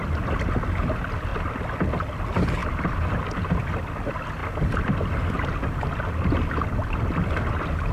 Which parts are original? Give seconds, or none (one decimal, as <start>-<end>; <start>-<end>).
0.0-1.3; 2.2-2.6; 3.5-4.4; 5.9-7.9